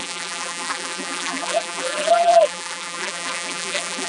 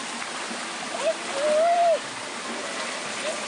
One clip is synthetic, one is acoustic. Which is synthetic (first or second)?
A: first